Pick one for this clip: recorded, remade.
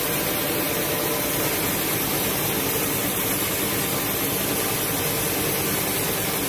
recorded